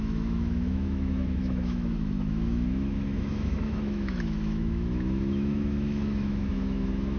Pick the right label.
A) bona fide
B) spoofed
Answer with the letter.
B